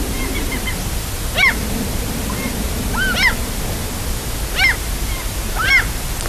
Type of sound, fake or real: real